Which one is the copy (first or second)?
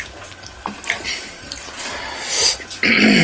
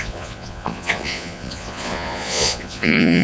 second